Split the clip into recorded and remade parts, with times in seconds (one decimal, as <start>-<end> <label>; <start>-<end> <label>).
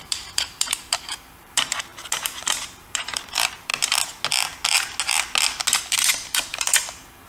0.0-3.7 remade; 3.7-5.8 recorded; 5.8-7.3 remade